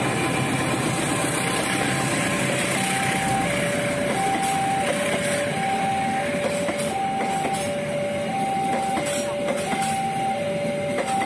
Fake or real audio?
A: real